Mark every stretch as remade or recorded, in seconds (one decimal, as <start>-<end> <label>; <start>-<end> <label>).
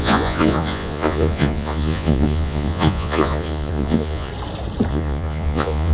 0.0-4.3 remade; 4.3-4.9 recorded; 4.9-5.9 remade